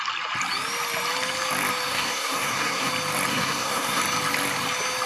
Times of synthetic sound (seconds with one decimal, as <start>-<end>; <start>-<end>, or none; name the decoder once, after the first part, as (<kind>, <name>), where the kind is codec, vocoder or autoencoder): 1.9-2.9 (codec, SNAC); 3.3-4.0